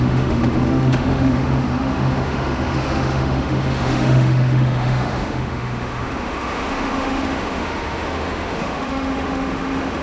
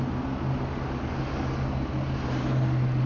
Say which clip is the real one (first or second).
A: second